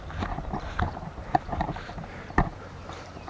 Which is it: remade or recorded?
remade